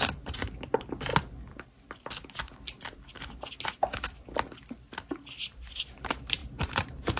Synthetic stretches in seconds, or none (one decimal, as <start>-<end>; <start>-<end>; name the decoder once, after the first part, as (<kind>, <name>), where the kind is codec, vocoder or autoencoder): 0.0-1.1 (vocoder, BigVGAN v2); 5.4-7.2